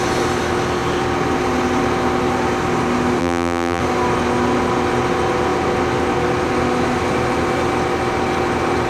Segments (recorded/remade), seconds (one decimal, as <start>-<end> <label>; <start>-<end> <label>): 0.0-3.2 recorded; 3.2-3.8 remade; 3.8-8.9 recorded

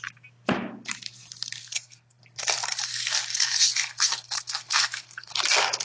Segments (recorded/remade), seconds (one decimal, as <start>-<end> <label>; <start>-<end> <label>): 0.0-1.6 recorded; 1.6-2.2 remade; 2.2-2.7 recorded; 2.7-5.3 remade; 5.3-5.8 recorded

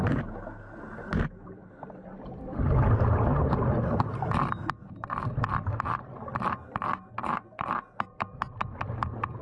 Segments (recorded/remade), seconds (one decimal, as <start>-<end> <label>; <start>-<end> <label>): 0.0-9.4 recorded

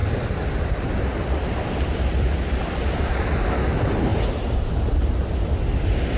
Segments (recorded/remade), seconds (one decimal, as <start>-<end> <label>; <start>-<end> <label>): 0.0-3.5 remade; 3.5-6.2 recorded

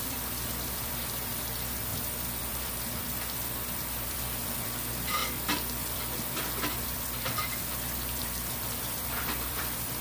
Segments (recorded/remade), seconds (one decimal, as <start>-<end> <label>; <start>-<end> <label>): 0.0-1.9 remade; 1.9-2.4 recorded; 2.4-5.2 remade; 5.2-6.8 recorded; 6.8-10.0 remade

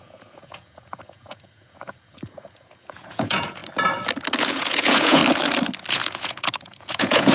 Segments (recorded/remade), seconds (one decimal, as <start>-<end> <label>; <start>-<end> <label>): 0.0-3.6 remade; 3.6-4.4 recorded; 4.4-5.2 remade; 5.2-5.9 recorded; 5.9-7.3 remade

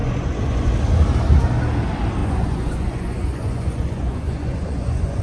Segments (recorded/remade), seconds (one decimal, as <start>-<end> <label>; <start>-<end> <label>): 0.0-0.7 remade; 0.7-2.2 recorded; 2.2-5.2 remade

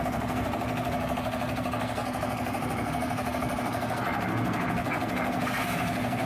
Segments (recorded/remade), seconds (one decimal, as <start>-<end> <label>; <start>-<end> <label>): 0.0-6.3 remade